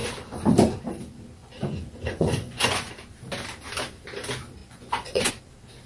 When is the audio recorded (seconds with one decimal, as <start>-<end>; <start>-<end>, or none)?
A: 0.0-1.4; 2.9-4.6; 5.3-5.9